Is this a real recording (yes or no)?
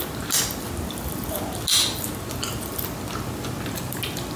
yes